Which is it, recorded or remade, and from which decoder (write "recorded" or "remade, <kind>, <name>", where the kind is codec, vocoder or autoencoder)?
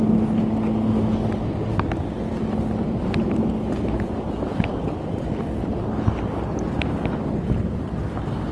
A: recorded